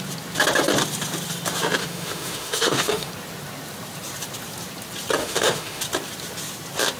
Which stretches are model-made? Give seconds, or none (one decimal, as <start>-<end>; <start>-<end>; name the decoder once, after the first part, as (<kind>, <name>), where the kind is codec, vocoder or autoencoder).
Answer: 1.8-3.1 (autoencoder, DAC-VAE); 5.2-5.8